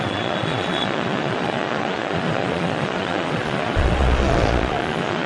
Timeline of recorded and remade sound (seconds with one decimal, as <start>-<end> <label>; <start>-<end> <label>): 0.0-5.3 remade